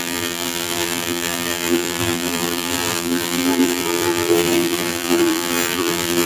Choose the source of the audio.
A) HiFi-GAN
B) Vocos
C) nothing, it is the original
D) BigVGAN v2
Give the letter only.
D